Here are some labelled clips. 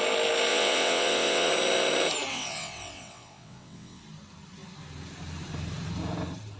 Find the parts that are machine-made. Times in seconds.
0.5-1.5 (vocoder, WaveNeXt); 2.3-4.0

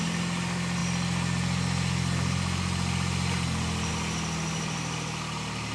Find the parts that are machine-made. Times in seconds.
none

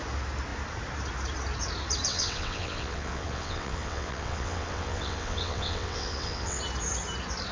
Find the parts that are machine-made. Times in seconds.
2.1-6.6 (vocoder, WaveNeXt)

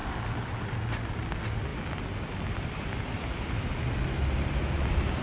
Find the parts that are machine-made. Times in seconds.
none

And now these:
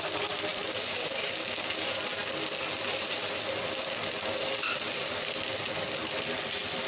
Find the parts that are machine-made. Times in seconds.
none

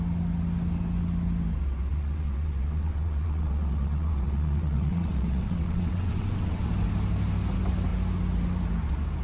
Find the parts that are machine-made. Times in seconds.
1.9-6.7 (vocoder, WaveNeXt)